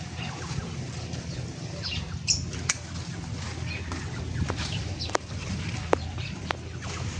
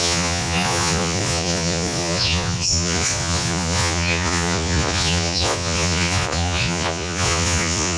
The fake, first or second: second